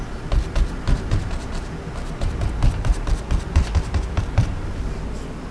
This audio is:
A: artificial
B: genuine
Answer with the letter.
B